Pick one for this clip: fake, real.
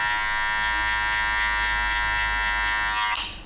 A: real